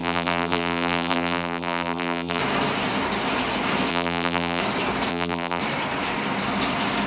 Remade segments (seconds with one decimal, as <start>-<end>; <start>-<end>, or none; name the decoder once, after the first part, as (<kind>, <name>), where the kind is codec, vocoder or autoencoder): 0.0-2.4 (vocoder, BigVGAN v2); 3.9-4.6; 5.1-5.6